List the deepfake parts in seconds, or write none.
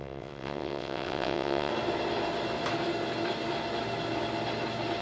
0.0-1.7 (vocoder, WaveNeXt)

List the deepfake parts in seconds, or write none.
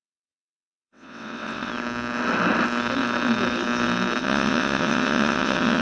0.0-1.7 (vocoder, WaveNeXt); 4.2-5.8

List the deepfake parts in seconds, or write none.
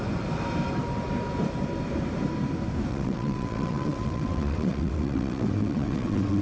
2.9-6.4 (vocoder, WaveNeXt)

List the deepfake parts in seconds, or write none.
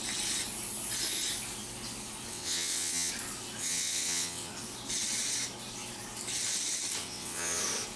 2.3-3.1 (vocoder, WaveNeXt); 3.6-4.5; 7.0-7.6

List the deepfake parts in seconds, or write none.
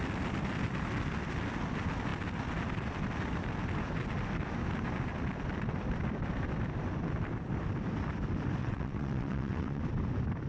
8.6-9.8 (vocoder, WaveNeXt)